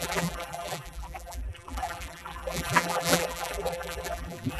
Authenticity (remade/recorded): remade